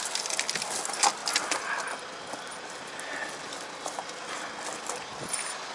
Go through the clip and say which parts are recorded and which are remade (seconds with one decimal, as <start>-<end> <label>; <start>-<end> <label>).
0.0-5.7 recorded